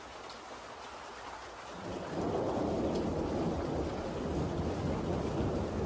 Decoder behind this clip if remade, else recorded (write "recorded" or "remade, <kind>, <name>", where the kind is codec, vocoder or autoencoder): recorded